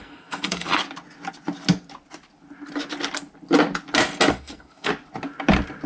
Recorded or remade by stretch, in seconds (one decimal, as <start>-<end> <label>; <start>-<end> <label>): 0.0-0.8 remade; 0.8-4.3 recorded; 4.3-4.9 remade; 4.9-5.9 recorded